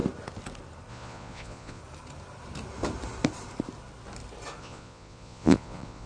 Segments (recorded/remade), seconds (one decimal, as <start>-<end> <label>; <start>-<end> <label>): 0.0-0.9 recorded; 0.9-1.8 remade; 1.8-4.6 recorded; 4.6-6.1 remade